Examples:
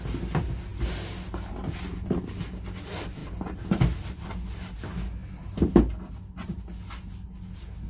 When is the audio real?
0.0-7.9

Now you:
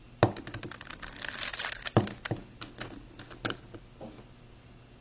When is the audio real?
0.0-5.0

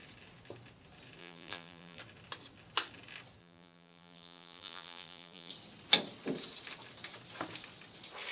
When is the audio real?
0.0-1.2; 2.0-3.4; 5.5-8.3